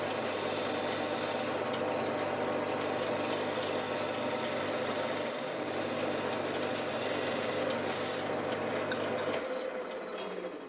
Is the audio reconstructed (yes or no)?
no